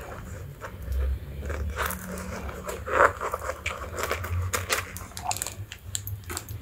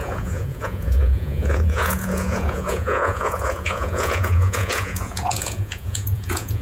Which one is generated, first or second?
second